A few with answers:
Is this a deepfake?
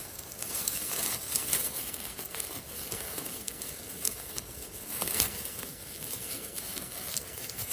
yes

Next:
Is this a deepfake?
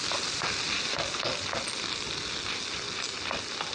no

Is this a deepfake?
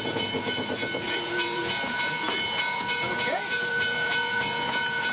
yes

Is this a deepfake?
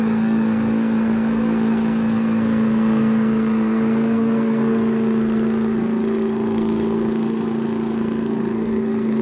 yes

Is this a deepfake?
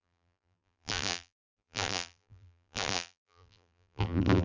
yes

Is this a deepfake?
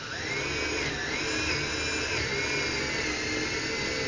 no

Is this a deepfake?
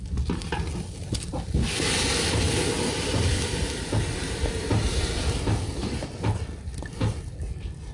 no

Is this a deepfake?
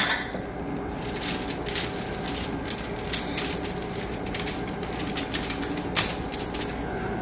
yes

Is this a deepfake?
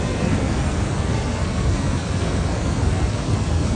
yes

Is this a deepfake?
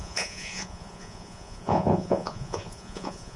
yes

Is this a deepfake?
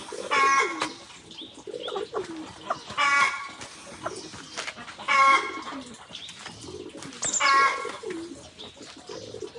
no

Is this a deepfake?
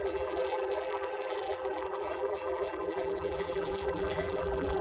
yes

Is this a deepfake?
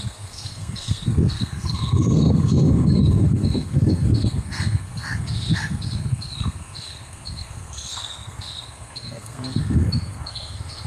yes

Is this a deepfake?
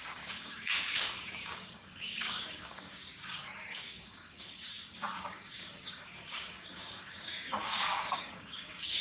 yes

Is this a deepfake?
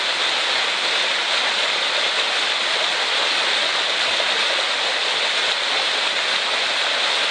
no